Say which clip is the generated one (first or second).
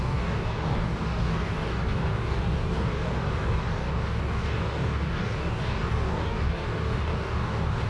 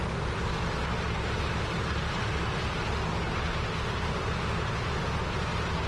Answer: first